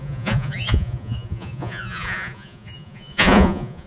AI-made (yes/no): yes